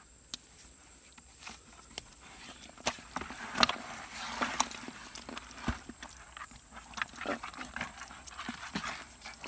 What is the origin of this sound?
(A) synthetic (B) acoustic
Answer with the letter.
B